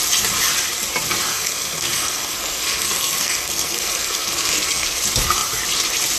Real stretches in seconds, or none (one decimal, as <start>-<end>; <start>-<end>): 0.0-1.3; 5.0-6.2